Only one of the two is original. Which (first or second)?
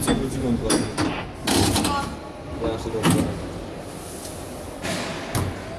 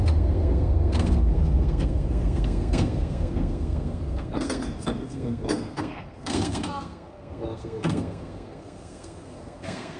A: first